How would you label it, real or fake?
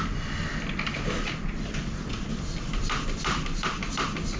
real